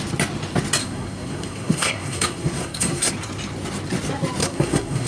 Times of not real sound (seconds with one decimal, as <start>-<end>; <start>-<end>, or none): 0.8-3.1; 4.4-5.1